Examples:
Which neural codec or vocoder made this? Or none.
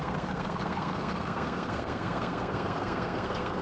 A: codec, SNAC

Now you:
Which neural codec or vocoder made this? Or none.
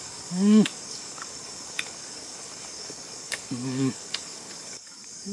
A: codec, DAC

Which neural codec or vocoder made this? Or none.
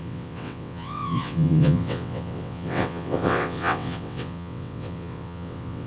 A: vocoder, WaveNeXt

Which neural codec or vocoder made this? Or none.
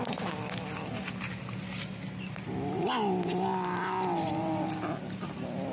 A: none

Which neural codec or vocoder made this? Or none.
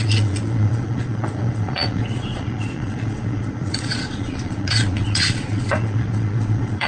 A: vocoder, Vocos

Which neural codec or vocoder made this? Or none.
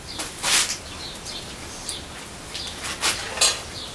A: none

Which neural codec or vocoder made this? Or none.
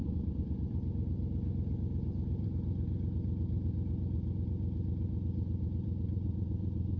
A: vocoder, BigVGAN v2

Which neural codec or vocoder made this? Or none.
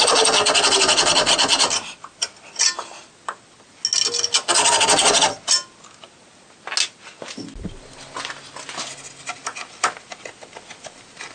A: none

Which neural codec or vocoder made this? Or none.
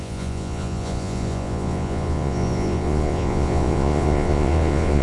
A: vocoder, Vocos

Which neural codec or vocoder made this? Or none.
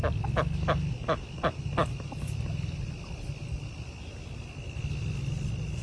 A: none